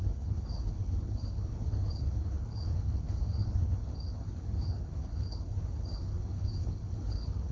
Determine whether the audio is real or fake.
fake